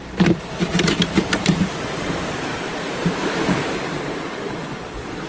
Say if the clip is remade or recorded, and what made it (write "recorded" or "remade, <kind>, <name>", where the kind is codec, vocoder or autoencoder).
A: remade, vocoder, BigVGAN v2